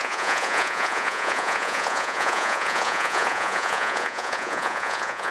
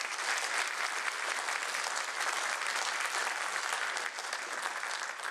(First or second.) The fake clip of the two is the first